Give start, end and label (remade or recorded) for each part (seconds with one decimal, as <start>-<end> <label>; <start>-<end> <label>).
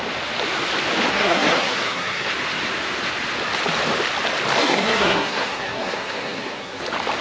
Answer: 0.0-1.1 recorded; 1.1-2.3 remade; 2.3-4.6 recorded; 4.6-6.8 remade; 6.8-7.2 recorded